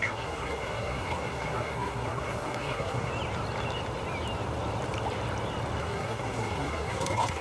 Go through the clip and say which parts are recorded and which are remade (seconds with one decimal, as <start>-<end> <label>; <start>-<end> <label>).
0.0-3.1 remade; 3.1-5.8 recorded; 5.8-7.4 remade